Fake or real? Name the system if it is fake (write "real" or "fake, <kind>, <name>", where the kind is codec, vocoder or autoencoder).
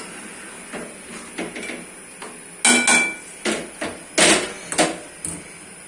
real